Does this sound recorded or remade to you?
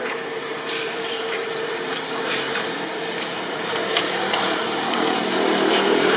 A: remade